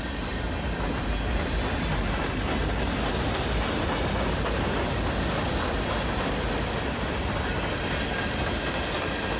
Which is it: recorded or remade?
recorded